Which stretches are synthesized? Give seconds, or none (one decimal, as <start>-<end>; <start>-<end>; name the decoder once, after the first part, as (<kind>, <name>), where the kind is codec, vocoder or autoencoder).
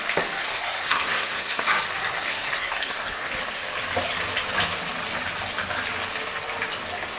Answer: 0.4-1.6 (codec, SNAC); 2.3-3.3